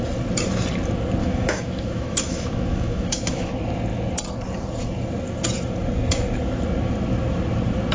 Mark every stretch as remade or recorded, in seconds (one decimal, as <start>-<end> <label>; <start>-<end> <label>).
0.0-1.2 recorded; 1.2-3.5 remade; 3.5-7.9 recorded